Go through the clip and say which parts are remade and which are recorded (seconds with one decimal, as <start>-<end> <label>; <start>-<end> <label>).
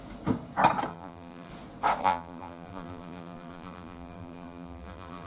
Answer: 0.0-0.9 recorded; 0.9-1.5 remade; 1.5-2.0 recorded; 2.0-5.3 remade